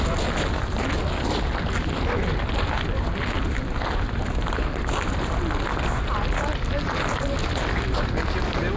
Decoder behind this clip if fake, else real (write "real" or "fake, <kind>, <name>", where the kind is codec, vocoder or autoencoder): real